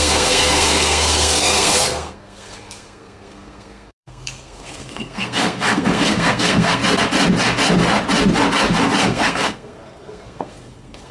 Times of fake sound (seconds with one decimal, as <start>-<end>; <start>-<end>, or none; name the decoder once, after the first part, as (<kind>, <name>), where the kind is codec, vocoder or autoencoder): 0.0-6.8 (codec, SNAC); 9.0-11.1